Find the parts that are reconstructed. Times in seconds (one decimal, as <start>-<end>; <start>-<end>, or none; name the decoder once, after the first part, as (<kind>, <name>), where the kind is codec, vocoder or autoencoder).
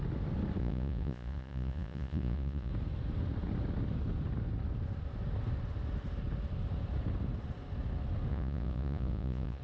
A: 0.6-2.7 (vocoder, Vocos); 8.3-9.6